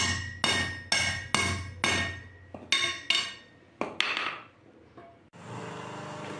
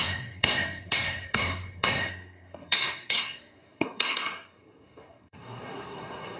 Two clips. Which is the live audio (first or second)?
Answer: first